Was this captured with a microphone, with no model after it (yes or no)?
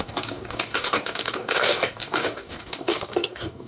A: no